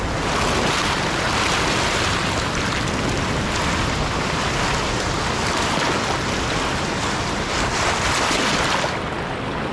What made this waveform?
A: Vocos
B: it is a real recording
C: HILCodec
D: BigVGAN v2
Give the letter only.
B